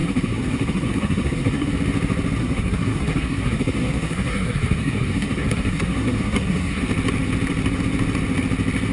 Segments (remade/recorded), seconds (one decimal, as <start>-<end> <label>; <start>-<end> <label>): 0.0-1.7 remade; 1.7-2.4 recorded; 2.4-6.8 remade; 6.8-8.9 recorded